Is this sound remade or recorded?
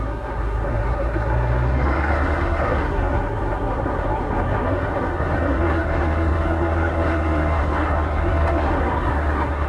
remade